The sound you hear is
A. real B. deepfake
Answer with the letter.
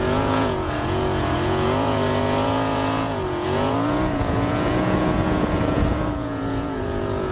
B